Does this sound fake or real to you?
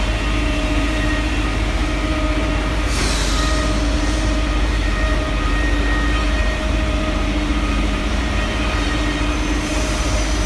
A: fake